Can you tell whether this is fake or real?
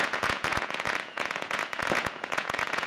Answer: fake